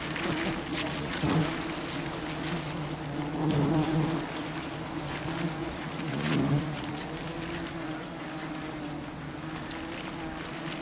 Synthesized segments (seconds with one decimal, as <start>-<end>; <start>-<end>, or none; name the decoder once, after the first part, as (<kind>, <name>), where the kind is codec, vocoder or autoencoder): 0.7-1.4 (vocoder, Vocos); 5.6-7.0